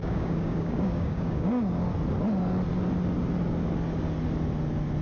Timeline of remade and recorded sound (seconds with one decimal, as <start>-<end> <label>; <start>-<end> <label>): 0.0-1.6 remade; 1.6-5.0 recorded